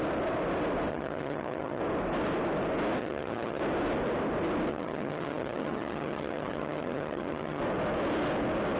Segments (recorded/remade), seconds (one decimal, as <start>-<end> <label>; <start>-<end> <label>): 0.0-0.9 recorded; 0.9-1.8 remade; 1.8-3.0 recorded; 3.0-3.6 remade; 3.6-4.7 recorded; 4.7-7.6 remade; 7.6-8.8 recorded